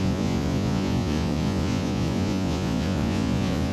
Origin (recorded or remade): remade